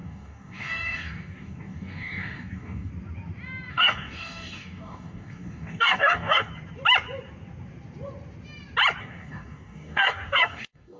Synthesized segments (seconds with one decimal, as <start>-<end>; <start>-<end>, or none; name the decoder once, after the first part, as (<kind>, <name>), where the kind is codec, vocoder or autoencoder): 0.0-2.9 (codec, DAC); 3.7-6.5; 9.0-11.0

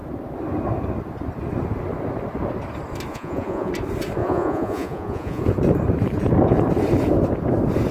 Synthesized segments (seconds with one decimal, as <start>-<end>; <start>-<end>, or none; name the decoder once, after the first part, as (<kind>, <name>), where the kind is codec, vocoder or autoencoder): 3.1-3.7 (vocoder, Vocos); 4.2-5.4

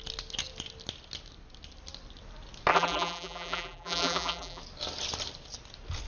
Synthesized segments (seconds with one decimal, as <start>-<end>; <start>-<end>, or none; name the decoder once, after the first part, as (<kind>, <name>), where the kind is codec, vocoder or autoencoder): 2.7-4.6 (vocoder, BigVGAN v2)

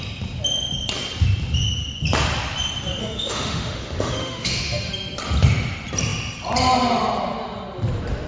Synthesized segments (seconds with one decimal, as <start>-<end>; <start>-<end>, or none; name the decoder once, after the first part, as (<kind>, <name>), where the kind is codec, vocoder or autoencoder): 3.0-4.9 (autoencoder, DAC-VAE)

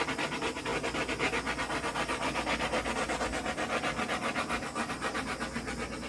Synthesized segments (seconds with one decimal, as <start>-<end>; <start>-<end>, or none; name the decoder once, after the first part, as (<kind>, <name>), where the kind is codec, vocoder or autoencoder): none

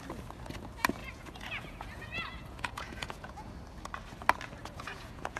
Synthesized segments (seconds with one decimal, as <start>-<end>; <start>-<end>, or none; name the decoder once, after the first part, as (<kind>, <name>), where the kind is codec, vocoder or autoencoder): 1.0-3.5 (vocoder, Vocos); 4.6-5.4

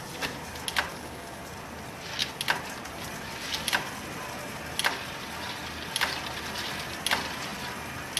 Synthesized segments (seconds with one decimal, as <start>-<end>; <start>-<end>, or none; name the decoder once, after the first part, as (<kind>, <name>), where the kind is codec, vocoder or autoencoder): 0.9-1.4 (codec, DAC)

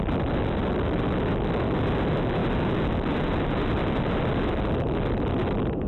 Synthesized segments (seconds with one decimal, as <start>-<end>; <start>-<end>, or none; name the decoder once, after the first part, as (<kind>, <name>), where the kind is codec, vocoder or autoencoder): none